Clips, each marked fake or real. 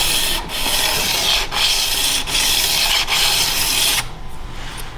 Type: real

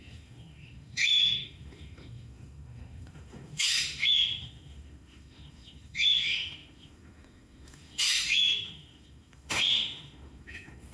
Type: fake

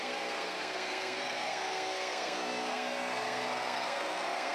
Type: fake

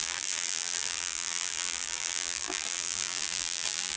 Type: fake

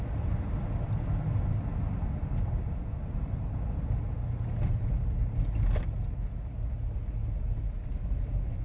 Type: real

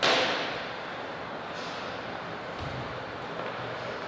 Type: real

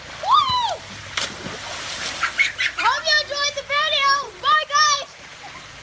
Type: fake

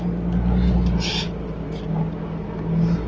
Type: real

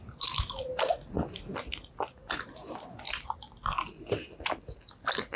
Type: real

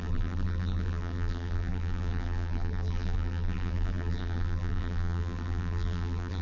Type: fake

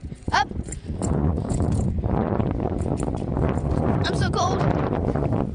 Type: fake